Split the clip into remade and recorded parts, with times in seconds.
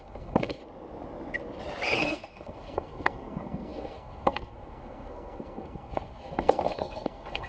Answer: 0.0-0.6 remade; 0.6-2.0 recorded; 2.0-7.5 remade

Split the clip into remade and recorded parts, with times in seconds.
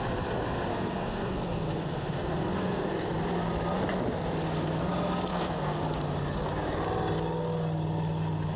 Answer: 0.0-0.7 recorded; 0.7-2.9 remade; 2.9-5.3 recorded; 5.3-5.8 remade; 5.8-8.6 recorded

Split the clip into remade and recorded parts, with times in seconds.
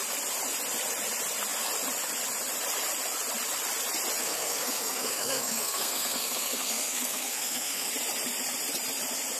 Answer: 0.0-4.2 recorded; 4.2-7.9 remade; 7.9-9.4 recorded